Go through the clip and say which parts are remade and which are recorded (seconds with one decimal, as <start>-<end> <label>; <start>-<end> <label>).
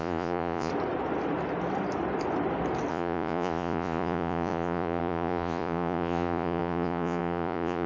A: 0.0-0.7 remade; 0.7-2.9 recorded; 2.9-7.9 remade